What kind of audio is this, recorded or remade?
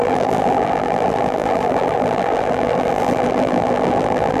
remade